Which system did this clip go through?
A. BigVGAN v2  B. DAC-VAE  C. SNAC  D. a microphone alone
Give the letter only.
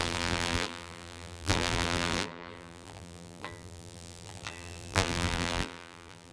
A